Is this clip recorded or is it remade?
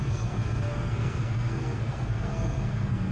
remade